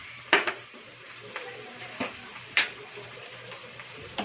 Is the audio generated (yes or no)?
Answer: yes